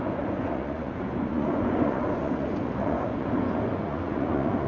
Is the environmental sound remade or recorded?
remade